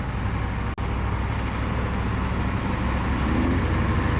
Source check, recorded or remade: recorded